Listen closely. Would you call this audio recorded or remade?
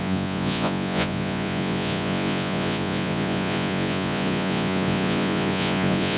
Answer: remade